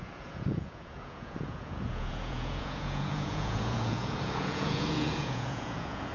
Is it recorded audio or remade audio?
remade